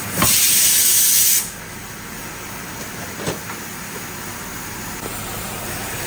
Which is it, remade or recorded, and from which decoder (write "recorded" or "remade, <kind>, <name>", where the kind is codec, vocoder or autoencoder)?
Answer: recorded